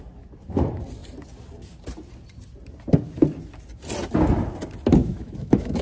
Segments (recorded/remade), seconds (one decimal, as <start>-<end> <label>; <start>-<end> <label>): 0.0-5.0 recorded; 5.0-5.8 remade